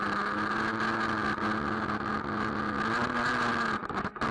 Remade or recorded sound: recorded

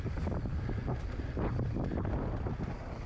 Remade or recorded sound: recorded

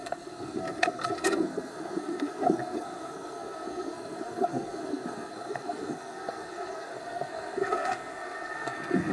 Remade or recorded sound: remade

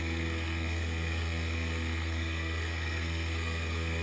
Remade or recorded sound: remade